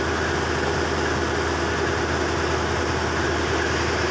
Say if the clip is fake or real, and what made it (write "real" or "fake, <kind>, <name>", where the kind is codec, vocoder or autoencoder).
real